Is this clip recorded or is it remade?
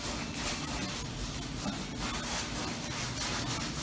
recorded